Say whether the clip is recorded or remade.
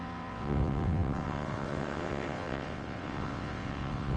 remade